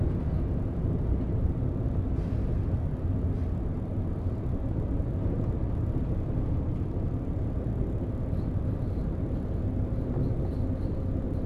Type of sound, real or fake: real